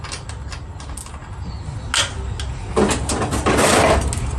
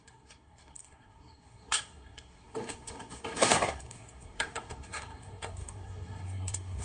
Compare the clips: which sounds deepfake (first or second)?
second